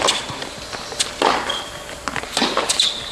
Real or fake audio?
real